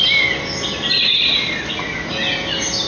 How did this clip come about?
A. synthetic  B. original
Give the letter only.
B